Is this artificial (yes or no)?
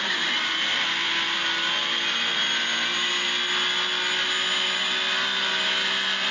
no